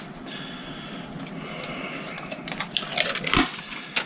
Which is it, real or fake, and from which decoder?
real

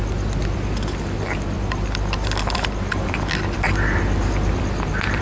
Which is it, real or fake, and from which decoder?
real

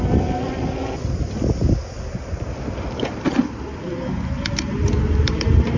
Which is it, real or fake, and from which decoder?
real